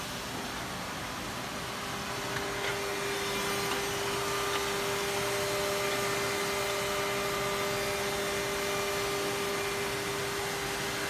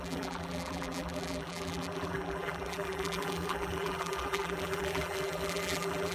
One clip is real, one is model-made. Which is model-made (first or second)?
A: second